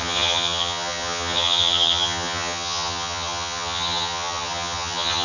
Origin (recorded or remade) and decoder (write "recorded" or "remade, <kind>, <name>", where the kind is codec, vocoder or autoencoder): remade, vocoder, HiFi-GAN